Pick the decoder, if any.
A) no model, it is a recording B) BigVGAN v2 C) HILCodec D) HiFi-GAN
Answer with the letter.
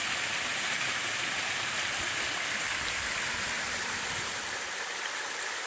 B